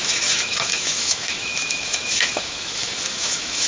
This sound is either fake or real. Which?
fake